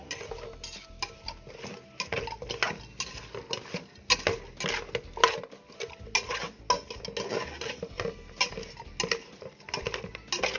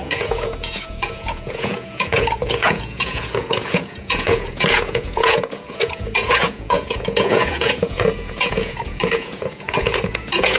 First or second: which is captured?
first